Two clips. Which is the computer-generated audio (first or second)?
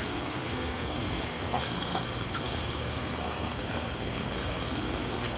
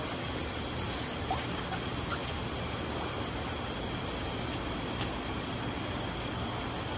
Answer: first